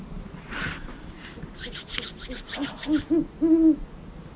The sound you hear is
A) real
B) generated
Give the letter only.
A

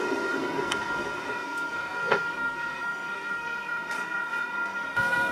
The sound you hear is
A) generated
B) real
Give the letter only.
A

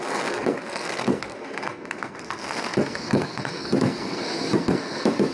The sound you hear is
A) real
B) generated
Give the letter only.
B